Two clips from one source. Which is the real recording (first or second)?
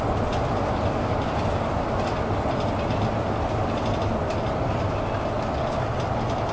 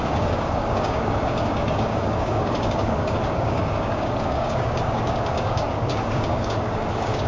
first